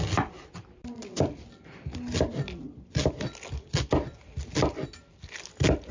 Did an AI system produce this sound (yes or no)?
no